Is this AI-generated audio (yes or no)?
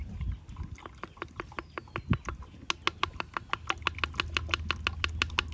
no